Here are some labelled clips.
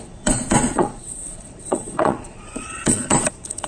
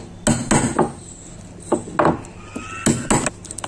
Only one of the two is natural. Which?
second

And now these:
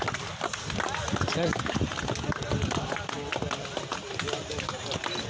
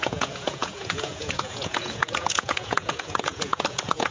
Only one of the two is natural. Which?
first